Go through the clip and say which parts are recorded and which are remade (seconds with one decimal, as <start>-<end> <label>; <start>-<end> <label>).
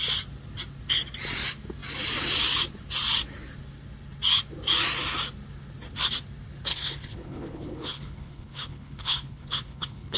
0.0-6.7 recorded; 6.7-10.2 remade